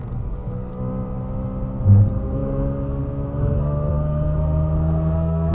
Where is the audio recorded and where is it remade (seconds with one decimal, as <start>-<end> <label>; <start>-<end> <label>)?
0.0-0.7 remade; 0.7-1.8 recorded; 1.8-5.5 remade

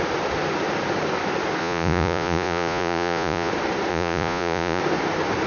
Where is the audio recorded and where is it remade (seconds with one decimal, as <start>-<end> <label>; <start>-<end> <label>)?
0.0-1.6 recorded; 1.6-3.5 remade; 3.5-3.9 recorded; 3.9-4.8 remade; 4.8-5.5 recorded

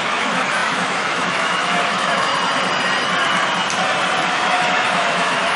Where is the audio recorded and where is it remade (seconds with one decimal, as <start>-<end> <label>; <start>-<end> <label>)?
0.0-2.3 remade; 2.3-4.3 recorded; 4.3-5.6 remade

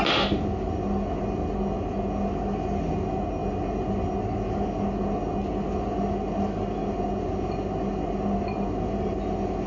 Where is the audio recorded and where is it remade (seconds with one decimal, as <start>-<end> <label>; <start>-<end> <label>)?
0.0-9.7 recorded

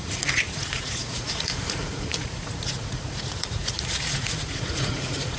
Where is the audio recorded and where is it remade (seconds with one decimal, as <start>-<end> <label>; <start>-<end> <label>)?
0.0-5.4 remade

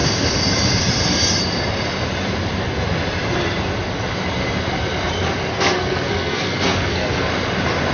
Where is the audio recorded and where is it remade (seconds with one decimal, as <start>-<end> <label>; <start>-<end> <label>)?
0.0-5.5 recorded; 5.5-7.3 remade; 7.3-7.9 recorded